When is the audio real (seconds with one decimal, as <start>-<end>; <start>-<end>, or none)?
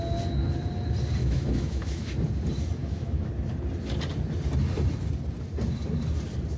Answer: 0.0-1.2; 2.1-2.8; 3.3-6.6